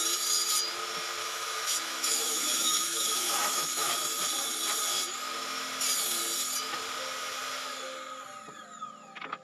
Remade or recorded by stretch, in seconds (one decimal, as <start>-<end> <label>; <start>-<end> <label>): 0.0-1.2 recorded; 1.2-3.9 remade; 3.9-9.4 recorded